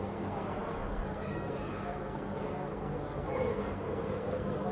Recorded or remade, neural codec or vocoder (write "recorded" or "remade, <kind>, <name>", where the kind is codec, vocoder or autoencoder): remade, codec, SNAC